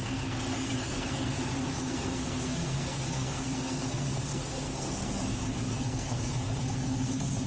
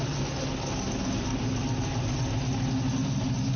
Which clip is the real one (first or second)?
second